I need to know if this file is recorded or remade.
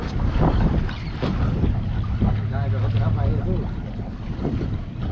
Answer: recorded